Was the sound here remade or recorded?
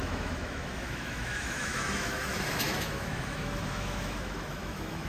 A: remade